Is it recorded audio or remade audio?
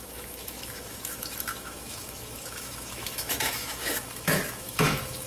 remade